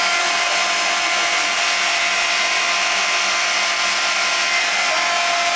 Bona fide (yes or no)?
yes